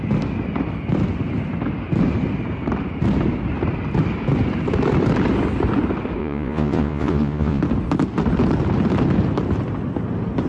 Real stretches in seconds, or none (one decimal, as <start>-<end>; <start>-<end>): 0.0-6.2; 7.6-10.5